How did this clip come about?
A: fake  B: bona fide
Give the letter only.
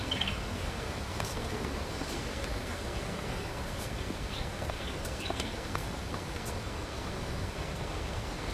A